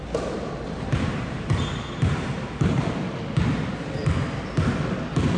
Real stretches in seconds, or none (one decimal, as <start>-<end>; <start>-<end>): 3.2-5.4